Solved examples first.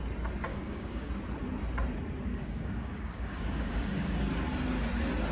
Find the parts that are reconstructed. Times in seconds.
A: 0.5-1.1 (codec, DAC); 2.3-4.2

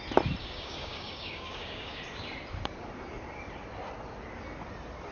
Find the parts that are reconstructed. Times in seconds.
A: 0.4-2.0 (codec, DAC)

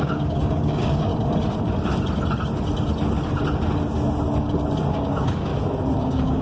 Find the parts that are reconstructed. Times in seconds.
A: 0.0-1.1 (codec, DAC); 4.9-5.5; 6.0-6.4

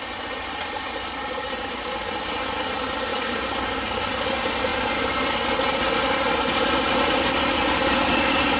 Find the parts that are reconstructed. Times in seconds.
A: 1.4-2.1 (codec, DAC); 3.1-4.1

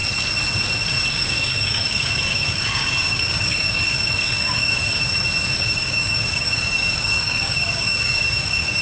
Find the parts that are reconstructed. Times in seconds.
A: 1.1-4.8 (codec, DAC); 5.5-8.8

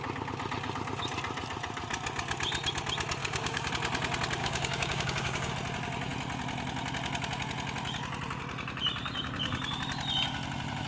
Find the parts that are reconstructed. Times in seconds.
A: 3.2-3.7 (codec, DAC); 4.4-5.5